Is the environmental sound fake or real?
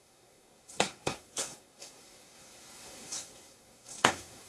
fake